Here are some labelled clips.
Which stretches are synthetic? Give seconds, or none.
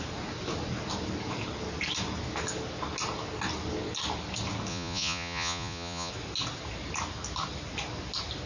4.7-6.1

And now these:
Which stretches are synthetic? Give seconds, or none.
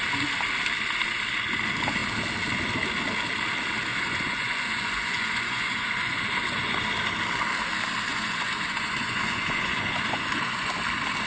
3.9-6.8; 8.1-10.7